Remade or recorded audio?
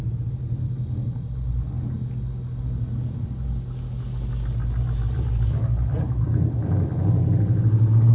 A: recorded